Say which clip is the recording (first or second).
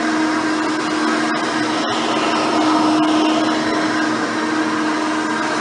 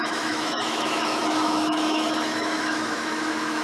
first